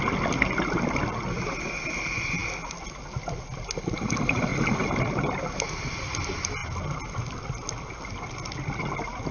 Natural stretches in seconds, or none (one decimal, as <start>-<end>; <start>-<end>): 0.0-9.3